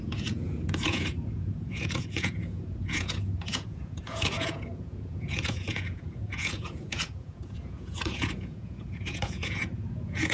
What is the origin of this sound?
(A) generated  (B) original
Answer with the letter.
A